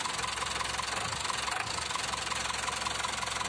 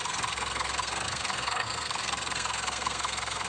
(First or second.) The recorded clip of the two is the first